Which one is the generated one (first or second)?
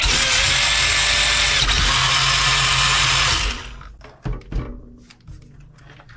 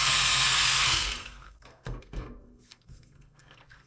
second